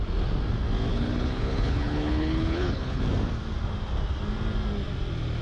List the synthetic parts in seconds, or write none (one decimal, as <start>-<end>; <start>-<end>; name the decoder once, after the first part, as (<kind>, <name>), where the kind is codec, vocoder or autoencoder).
0.9-3.0 (codec, HILCodec)